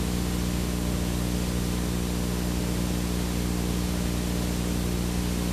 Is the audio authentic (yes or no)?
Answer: yes